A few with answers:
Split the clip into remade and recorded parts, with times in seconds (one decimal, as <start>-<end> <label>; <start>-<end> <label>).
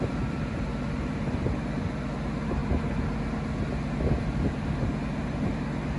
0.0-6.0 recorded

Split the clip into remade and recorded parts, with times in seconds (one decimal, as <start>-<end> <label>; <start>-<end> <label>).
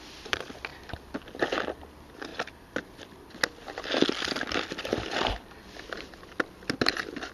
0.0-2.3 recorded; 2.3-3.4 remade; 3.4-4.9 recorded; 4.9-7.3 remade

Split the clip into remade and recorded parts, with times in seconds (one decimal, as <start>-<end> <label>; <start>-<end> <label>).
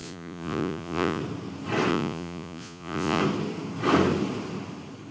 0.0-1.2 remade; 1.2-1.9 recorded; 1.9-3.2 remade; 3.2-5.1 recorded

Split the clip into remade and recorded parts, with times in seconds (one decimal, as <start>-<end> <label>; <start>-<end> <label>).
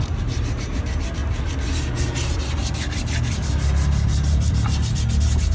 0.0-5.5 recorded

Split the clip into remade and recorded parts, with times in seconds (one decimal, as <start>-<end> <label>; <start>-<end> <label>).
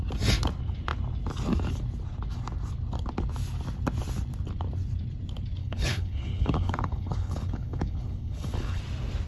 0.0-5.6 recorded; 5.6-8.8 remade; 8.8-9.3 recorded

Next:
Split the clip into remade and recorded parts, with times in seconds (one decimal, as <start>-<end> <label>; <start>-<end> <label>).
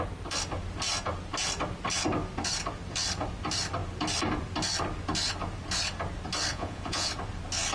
0.0-6.5 recorded; 6.5-7.1 remade; 7.1-7.7 recorded